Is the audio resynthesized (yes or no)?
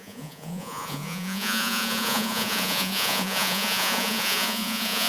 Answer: yes